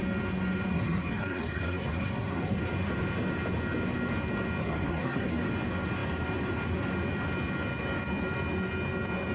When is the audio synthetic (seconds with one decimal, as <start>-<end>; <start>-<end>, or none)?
0.7-2.6; 4.6-5.5